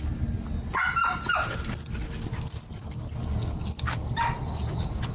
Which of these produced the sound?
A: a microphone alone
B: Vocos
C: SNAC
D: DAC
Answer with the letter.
A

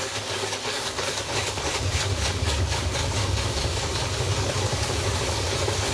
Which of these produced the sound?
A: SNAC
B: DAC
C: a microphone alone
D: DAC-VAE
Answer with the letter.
B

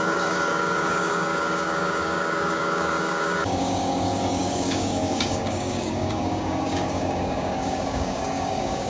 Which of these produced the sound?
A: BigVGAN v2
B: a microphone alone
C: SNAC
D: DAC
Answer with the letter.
D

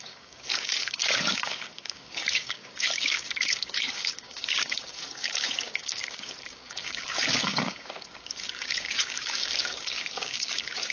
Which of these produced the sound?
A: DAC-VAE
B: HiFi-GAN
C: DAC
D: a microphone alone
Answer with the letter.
C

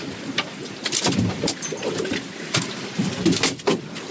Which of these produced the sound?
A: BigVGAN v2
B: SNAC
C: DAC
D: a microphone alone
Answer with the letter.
D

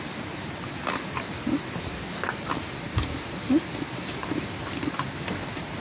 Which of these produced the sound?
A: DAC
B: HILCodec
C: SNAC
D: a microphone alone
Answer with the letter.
D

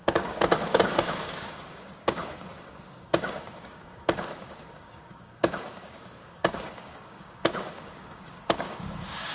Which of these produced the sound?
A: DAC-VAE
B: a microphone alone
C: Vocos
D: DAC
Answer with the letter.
D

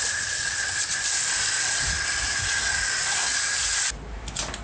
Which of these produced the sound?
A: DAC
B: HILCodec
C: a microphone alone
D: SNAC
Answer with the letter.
C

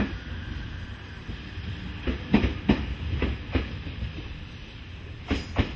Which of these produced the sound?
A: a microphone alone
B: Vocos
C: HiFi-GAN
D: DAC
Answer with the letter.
A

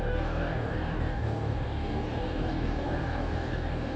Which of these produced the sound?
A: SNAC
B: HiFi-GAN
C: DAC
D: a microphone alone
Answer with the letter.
C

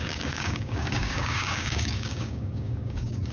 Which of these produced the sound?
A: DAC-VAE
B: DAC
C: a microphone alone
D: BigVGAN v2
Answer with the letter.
B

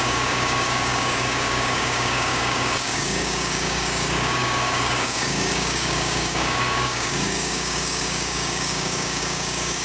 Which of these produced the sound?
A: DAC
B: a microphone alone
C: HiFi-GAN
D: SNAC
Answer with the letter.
A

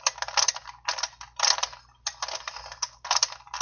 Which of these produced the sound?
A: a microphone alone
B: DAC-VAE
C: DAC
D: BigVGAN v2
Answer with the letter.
A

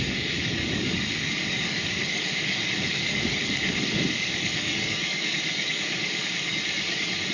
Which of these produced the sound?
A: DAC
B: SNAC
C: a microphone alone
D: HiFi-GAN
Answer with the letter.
A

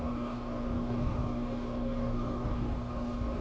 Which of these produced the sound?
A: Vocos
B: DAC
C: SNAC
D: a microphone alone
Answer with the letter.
B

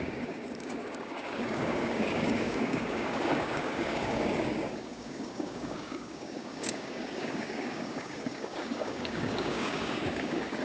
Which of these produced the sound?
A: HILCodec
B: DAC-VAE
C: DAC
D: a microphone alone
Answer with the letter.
C